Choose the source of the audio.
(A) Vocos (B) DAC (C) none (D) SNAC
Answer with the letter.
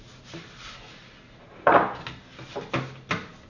C